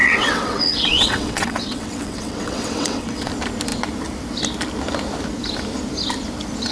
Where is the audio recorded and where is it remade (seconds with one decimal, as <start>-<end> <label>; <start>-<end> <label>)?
0.0-3.3 remade; 3.3-6.7 recorded